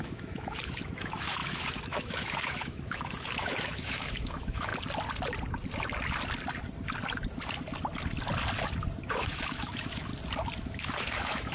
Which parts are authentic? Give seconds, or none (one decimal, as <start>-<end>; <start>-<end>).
4.7-9.1; 10.1-10.6